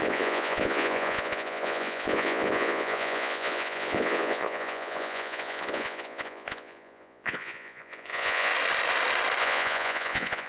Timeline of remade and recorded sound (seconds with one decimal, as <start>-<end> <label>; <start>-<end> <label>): 0.0-8.5 remade; 8.5-9.4 recorded; 9.4-10.5 remade